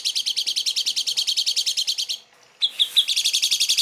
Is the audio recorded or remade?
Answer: recorded